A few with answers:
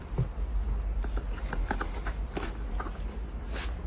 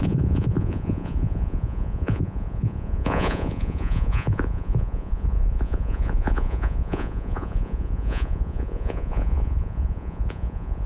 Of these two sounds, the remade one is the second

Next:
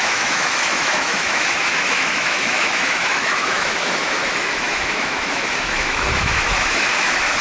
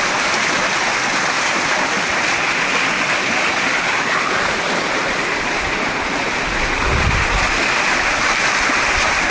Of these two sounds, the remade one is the first